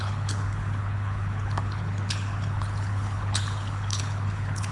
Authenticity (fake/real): fake